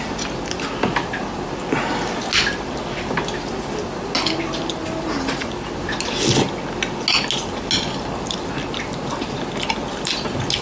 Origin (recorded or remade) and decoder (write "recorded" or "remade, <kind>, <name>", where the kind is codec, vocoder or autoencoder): recorded